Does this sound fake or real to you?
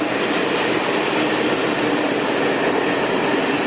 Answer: real